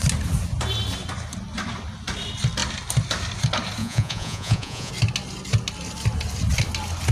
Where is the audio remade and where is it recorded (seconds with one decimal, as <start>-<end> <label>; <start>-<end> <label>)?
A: 0.0-3.8 recorded; 3.8-4.9 remade; 4.9-7.1 recorded